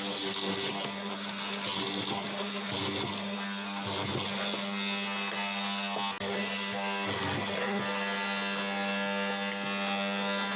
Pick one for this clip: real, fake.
real